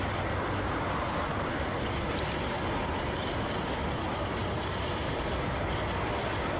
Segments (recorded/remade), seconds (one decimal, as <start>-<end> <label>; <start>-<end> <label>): 0.0-6.6 recorded